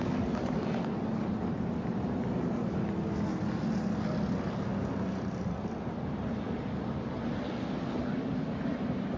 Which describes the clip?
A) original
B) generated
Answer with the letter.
A